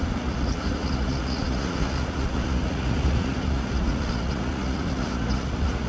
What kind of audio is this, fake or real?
fake